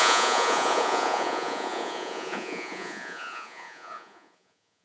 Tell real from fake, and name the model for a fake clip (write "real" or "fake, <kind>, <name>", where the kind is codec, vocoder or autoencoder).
fake, vocoder, Vocos